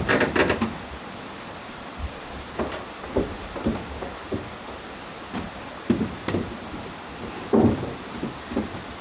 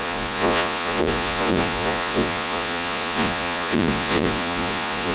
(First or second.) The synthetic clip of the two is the second